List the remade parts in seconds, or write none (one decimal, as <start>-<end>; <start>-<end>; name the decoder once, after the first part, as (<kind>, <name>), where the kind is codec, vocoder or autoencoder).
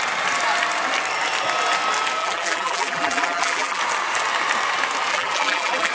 2.2-3.8 (vocoder, BigVGAN v2); 5.1-5.9